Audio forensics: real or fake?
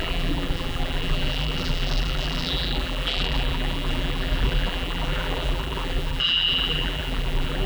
fake